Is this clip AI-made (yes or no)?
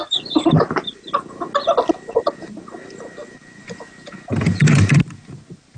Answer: no